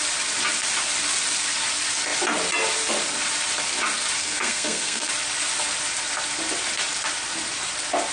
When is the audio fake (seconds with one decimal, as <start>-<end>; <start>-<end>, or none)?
4.2-5.1